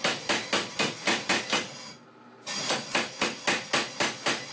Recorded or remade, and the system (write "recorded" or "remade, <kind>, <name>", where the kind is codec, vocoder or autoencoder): recorded